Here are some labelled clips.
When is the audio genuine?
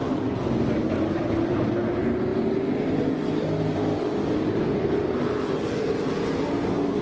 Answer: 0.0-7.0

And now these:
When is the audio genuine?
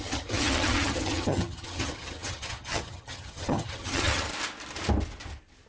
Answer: 4.3-5.7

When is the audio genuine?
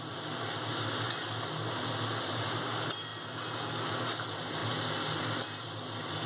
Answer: 0.0-6.3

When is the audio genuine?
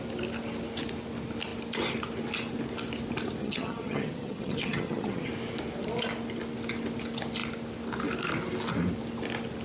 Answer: 0.0-3.4; 5.3-9.6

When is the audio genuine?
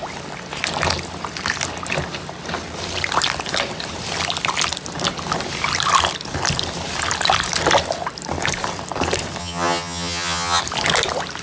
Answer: 0.0-9.4; 10.6-11.4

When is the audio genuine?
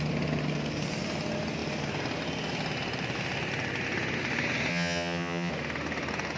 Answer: 0.0-4.7; 5.5-6.4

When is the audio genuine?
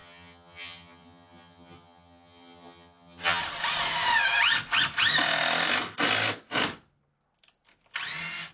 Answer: 3.4-8.5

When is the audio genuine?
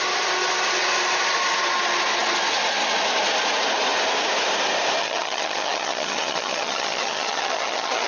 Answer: 0.0-5.0